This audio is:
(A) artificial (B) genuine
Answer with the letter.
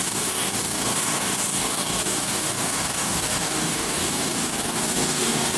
A